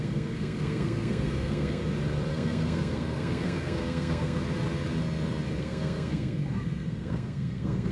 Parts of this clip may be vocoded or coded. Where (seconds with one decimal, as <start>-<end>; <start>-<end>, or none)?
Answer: 0.0-1.8; 2.3-4.4; 5.6-7.9